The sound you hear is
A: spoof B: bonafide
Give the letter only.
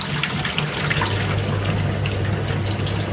B